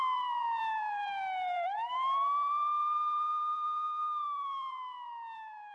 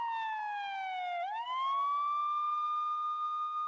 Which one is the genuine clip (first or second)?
second